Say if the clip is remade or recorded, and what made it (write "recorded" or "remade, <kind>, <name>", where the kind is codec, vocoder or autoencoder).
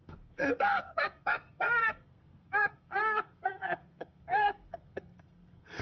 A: remade, codec, SNAC